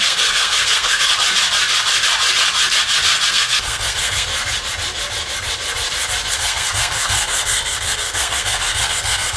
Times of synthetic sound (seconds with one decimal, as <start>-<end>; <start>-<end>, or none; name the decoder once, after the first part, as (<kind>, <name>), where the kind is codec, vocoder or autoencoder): 0.0-1.1 (codec, SNAC); 3.3-4.3; 6.3-9.4